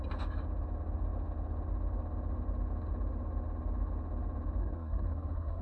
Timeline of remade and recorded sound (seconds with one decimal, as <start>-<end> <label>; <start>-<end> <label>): 0.0-4.6 recorded; 4.6-5.6 remade